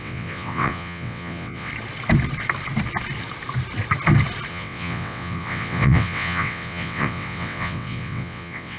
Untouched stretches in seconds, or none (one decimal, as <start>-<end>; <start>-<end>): 1.7-4.5